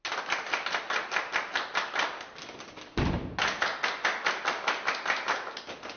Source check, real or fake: real